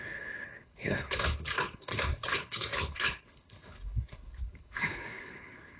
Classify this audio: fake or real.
fake